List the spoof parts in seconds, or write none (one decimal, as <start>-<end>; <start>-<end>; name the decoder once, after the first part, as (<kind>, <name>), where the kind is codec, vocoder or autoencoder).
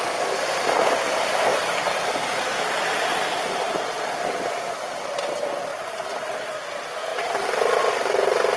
1.5-3.8 (vocoder, BigVGAN v2); 5.7-6.2; 7.1-7.9